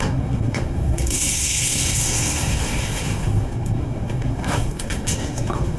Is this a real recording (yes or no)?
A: no